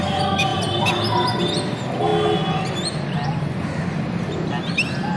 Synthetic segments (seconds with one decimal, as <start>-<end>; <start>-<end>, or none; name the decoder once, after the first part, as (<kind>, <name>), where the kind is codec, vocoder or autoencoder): 0.5-1.4 (vocoder, BigVGAN v2)